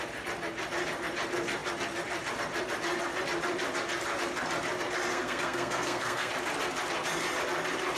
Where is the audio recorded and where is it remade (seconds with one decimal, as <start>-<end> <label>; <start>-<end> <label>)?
0.0-5.1 recorded; 5.1-6.3 remade; 6.3-8.0 recorded